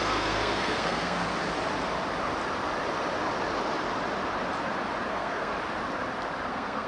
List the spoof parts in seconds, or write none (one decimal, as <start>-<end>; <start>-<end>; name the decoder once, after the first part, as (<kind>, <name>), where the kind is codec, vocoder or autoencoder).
0.0-1.3 (codec, SNAC); 5.1-5.5; 6.5-6.9